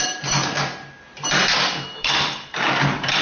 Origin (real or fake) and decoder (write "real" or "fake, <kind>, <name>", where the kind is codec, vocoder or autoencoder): fake, vocoder, BigVGAN v2